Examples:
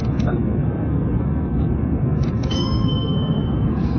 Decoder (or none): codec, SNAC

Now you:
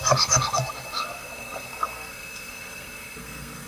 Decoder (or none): codec, SNAC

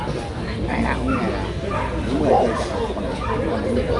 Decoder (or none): none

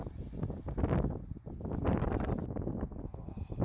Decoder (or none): none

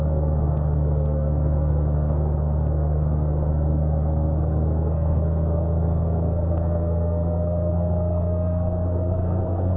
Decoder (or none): codec, SNAC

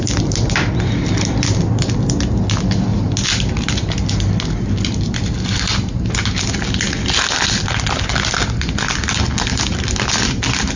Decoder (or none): none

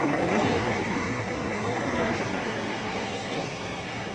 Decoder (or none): codec, SNAC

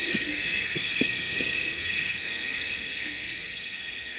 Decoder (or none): codec, SNAC